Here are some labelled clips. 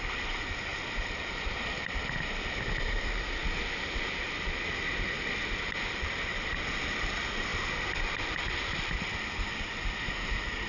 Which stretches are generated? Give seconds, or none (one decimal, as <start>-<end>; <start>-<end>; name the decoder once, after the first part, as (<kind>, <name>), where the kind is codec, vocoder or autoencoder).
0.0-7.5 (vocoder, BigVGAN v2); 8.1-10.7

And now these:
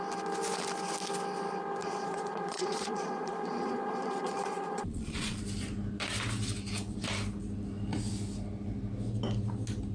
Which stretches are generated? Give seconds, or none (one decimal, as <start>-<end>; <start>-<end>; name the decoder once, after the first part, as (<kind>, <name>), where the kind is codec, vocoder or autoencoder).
1.8-5.4 (vocoder, Vocos)

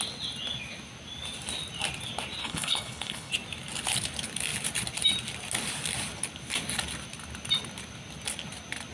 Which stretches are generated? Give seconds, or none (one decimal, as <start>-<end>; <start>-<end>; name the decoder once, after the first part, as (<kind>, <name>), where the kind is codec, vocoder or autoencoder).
2.4-3.3 (codec, HILCodec)

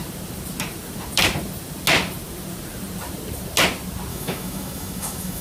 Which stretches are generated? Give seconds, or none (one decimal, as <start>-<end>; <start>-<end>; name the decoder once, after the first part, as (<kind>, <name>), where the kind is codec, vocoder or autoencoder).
4.1-5.4 (autoencoder, DAC-VAE)